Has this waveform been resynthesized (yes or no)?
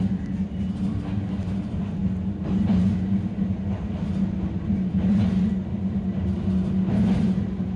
no